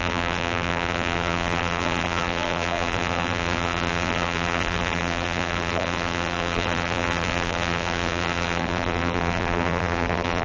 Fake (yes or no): yes